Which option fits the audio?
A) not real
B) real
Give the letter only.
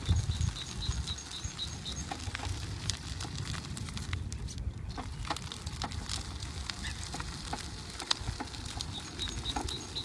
B